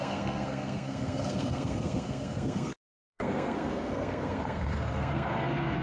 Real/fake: fake